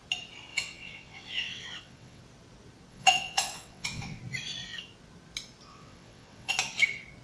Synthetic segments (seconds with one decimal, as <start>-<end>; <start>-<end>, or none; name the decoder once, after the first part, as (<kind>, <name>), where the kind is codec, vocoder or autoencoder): 0.5-2.2 (vocoder, WaveNeXt); 2.9-4.2; 5.7-6.5